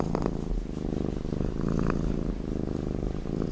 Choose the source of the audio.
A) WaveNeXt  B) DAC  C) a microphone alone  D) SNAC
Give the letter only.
C